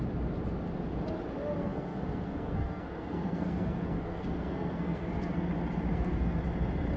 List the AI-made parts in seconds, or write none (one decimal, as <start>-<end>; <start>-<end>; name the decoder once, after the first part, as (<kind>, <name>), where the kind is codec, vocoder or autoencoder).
1.6-5.5 (codec, SNAC); 5.9-6.4